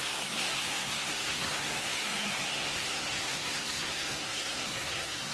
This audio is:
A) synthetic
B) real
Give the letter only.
A